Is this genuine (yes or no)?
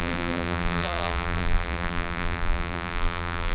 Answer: no